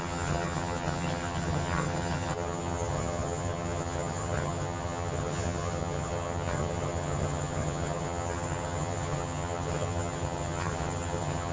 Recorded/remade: remade